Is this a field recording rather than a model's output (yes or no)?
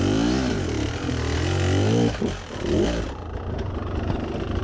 yes